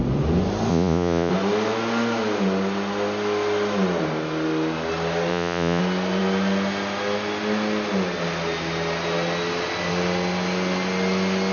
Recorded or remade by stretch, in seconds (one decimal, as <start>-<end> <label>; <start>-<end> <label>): 0.0-0.7 recorded; 0.7-1.3 remade; 1.3-5.3 recorded; 5.3-5.8 remade; 5.8-11.5 recorded